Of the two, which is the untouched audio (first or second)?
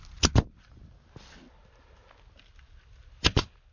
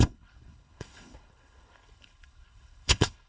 first